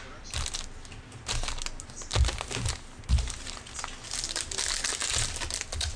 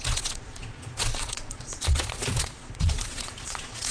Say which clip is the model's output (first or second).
second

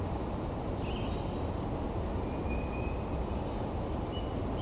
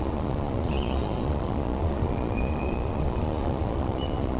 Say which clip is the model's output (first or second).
second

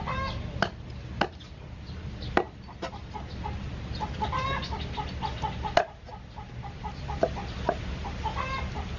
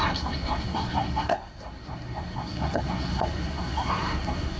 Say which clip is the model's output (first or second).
second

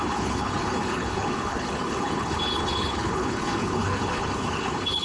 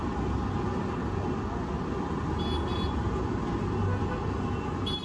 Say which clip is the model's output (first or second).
first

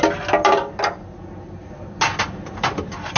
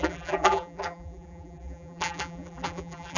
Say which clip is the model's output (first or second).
second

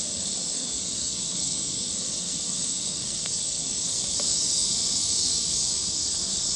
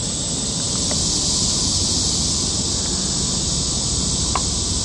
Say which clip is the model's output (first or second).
first